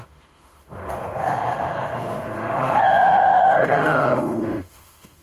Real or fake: fake